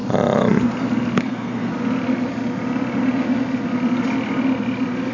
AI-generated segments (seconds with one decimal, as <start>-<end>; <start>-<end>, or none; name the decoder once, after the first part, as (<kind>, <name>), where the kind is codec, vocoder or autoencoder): 1.2-1.7 (codec, SNAC)